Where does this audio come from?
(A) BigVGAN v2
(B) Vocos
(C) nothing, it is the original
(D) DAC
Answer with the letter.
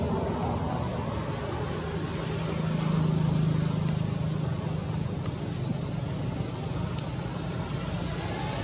C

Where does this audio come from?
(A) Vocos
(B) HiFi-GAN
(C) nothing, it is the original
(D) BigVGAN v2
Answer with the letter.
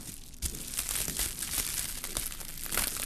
C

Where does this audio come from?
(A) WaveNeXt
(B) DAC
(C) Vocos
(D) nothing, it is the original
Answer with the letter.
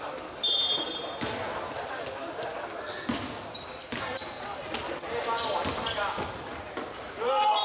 D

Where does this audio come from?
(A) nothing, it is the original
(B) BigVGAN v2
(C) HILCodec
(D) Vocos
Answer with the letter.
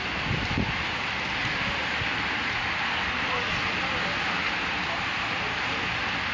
A